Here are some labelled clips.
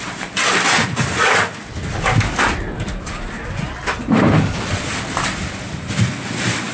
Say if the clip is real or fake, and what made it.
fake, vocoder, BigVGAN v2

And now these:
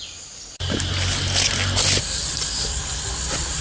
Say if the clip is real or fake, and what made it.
real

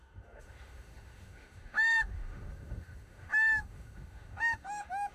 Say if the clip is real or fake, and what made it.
fake, autoencoder, DAC-VAE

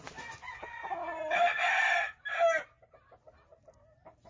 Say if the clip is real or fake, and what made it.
real